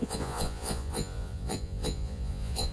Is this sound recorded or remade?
remade